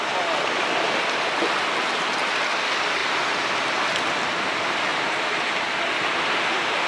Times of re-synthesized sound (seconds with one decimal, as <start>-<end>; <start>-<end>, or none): 3.0-3.7